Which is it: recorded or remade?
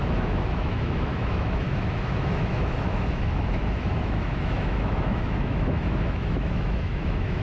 remade